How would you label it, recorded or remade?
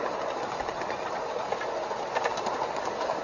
recorded